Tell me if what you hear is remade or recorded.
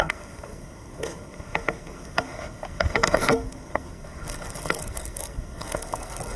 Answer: remade